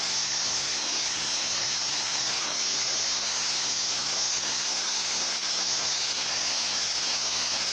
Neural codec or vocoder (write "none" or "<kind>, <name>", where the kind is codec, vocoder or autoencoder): codec, SNAC